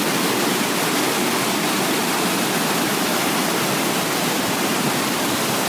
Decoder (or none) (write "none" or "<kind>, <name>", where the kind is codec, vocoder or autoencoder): none